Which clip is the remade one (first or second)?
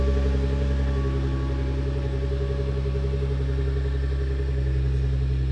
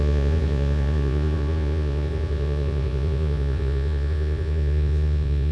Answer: second